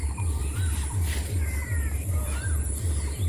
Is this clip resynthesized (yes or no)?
yes